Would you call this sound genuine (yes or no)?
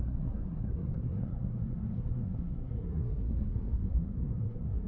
no